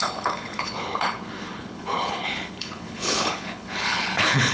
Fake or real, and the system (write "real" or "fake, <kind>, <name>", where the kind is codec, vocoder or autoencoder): fake, codec, HILCodec